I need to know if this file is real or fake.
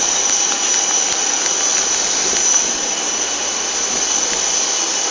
real